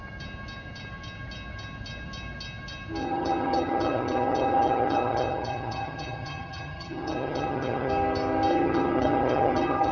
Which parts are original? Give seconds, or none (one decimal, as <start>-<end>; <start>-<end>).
0.0-3.0; 7.9-8.5